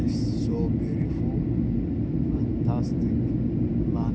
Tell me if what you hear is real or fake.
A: real